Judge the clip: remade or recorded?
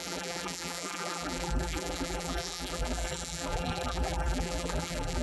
remade